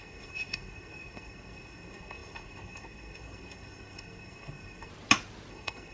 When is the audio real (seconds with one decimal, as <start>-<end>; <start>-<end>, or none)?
4.9-5.5